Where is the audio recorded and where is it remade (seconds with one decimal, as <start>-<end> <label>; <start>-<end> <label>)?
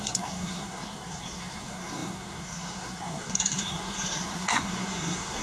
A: 0.0-5.4 remade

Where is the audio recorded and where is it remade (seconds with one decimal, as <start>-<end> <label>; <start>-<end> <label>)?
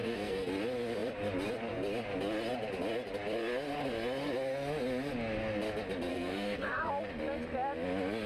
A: 0.0-0.5 remade; 0.5-6.1 recorded; 6.1-6.9 remade; 6.9-8.3 recorded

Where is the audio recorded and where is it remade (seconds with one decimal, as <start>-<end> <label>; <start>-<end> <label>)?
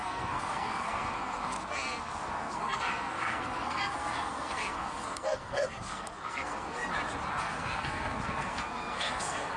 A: 0.0-6.8 remade; 6.8-7.4 recorded; 7.4-9.6 remade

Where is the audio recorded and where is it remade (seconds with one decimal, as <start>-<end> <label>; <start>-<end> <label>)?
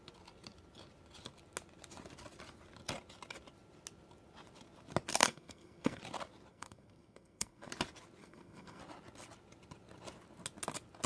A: 0.0-5.2 recorded; 5.2-6.0 remade; 6.0-6.5 recorded; 6.5-7.7 remade; 7.7-8.2 recorded; 8.2-8.8 remade; 8.8-11.1 recorded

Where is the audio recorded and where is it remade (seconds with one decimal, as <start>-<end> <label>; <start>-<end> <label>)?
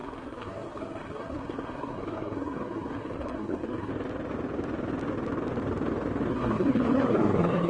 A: 0.0-3.9 remade; 3.9-6.3 recorded; 6.3-7.7 remade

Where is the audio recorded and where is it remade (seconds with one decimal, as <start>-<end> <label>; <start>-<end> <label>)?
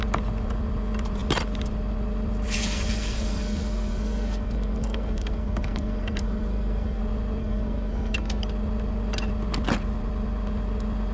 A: 0.0-2.6 recorded; 2.6-7.0 remade; 7.0-7.4 recorded; 7.4-8.4 remade; 8.4-11.1 recorded